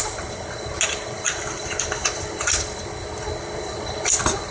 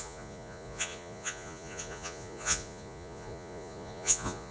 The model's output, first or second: second